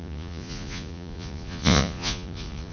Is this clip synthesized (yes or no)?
yes